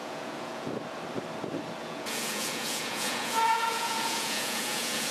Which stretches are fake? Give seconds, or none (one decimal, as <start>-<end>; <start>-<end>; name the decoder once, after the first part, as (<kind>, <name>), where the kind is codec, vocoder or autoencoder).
0.0-0.7 (vocoder, Vocos); 1.8-5.1